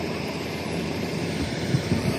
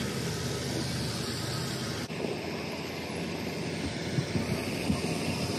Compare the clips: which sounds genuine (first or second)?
second